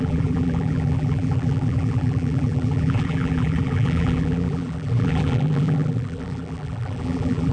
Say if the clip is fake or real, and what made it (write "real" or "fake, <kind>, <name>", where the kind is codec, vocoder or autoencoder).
fake, vocoder, BigVGAN v2